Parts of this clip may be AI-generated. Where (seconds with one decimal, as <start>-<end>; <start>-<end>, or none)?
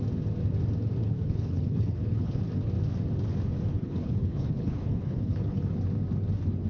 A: 1.0-2.4; 3.7-5.7